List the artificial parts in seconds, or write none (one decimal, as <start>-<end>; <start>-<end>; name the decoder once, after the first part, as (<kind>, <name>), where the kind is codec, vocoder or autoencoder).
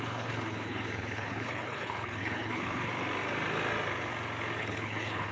0.0-2.9 (codec, HILCodec); 4.6-5.3